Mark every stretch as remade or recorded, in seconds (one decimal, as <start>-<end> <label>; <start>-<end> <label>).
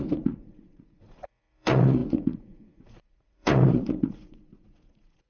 0.0-5.3 remade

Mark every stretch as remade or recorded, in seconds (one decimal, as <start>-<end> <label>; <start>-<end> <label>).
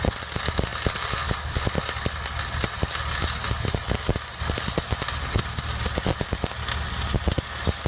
0.0-7.9 recorded